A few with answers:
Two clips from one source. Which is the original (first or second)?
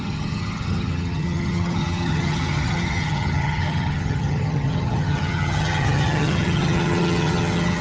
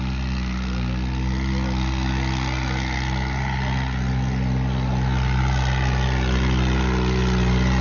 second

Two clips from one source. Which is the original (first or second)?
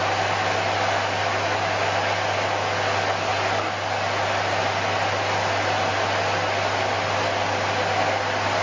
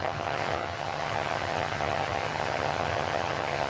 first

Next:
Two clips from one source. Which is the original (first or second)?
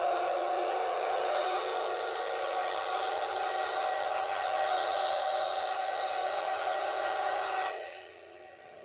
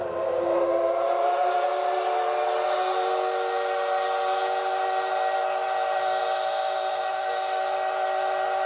second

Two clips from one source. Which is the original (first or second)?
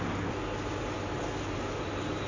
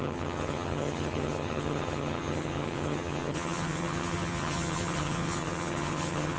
first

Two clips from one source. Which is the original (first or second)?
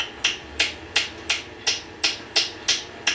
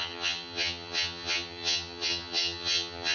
first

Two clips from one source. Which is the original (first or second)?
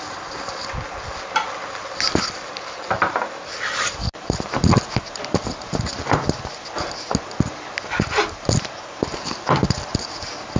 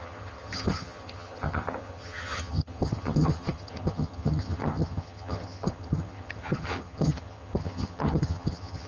first